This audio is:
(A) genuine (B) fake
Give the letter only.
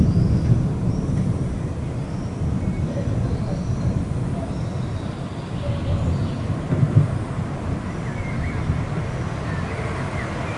A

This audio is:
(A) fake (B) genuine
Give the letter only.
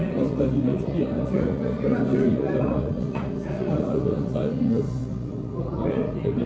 A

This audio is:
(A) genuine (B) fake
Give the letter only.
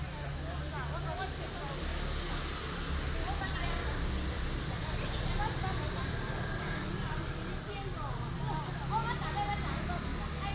A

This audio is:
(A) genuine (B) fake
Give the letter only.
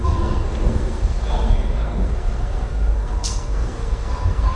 B